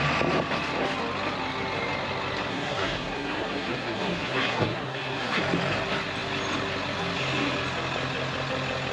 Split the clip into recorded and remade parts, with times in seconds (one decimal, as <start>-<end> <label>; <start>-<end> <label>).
0.0-2.5 recorded; 2.5-5.4 remade; 5.4-8.9 recorded